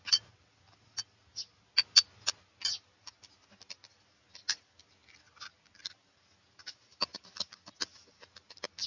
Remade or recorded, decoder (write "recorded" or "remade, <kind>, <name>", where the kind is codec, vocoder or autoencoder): recorded